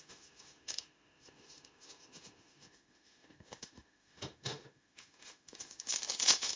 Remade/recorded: remade